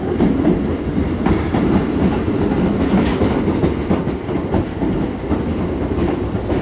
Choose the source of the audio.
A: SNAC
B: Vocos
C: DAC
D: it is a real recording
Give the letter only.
D